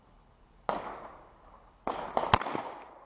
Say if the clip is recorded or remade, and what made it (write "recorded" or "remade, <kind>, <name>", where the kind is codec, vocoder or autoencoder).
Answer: recorded